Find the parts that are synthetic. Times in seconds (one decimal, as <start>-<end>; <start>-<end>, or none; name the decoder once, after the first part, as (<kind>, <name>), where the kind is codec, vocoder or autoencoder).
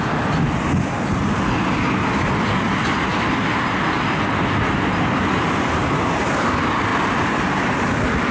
none